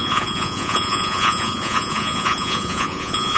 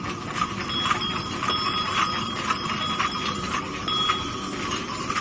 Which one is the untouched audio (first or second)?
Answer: second